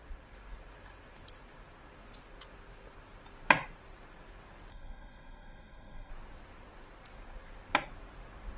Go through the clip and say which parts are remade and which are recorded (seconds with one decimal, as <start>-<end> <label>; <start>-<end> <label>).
0.0-4.7 recorded; 4.7-6.1 remade; 6.1-8.6 recorded

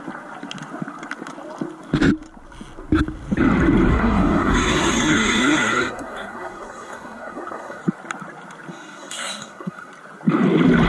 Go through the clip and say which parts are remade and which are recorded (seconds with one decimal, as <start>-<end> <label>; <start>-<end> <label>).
0.0-3.9 recorded; 3.9-7.8 remade; 7.8-8.7 recorded; 8.7-9.9 remade; 9.9-10.9 recorded